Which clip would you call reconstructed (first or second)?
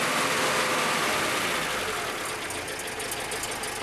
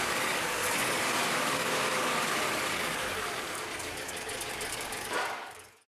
second